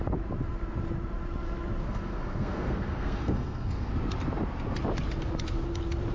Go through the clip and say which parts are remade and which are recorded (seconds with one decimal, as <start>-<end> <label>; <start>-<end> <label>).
0.0-1.8 recorded; 1.8-3.9 remade; 3.9-6.1 recorded